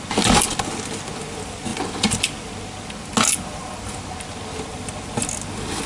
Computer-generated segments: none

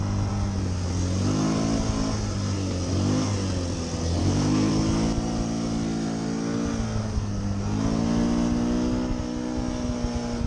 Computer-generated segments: 4.2-4.7 (codec, SNAC); 7.0-7.6

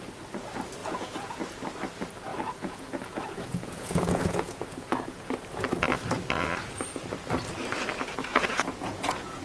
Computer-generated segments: 0.8-1.4 (vocoder, Vocos); 2.3-5.3; 8.3-9.4